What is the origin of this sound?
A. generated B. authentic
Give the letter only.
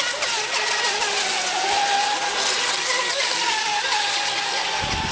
B